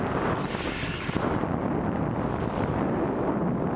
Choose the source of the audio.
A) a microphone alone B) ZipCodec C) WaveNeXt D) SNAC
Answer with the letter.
A